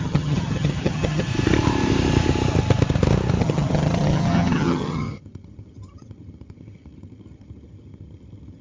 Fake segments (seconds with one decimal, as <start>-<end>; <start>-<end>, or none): 0.0-1.3; 3.4-8.6